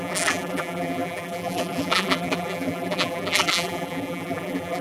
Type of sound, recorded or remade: remade